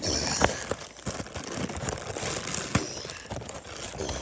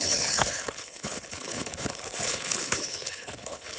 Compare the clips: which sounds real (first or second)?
first